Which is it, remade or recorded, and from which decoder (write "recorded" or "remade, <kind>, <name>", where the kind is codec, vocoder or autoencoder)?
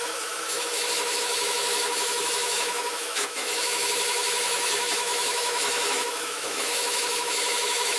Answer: remade, autoencoder, DAC-VAE